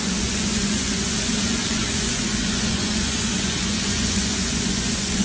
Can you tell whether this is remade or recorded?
remade